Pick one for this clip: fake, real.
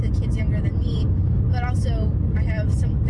real